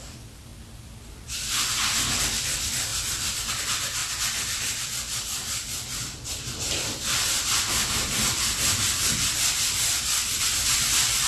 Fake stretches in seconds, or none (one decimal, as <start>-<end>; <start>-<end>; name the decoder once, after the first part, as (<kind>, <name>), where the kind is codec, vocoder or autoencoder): 0.0-0.5 (vocoder, BigVGAN v2); 2.2-2.9; 3.5-11.3